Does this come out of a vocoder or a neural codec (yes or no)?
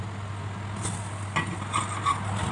no